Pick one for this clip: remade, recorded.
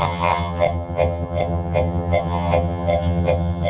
remade